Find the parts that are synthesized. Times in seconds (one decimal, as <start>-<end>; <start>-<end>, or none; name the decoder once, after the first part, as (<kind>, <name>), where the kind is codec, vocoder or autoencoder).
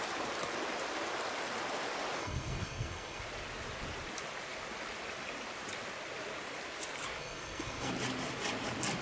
2.2-3.2 (codec, SNAC); 7.2-7.9